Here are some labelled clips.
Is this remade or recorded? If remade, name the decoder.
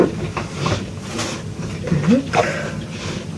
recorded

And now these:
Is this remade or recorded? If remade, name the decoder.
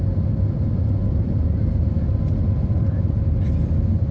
recorded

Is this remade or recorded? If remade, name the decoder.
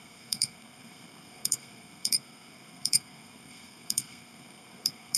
remade, codec, SNAC